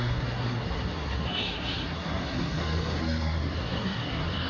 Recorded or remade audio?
remade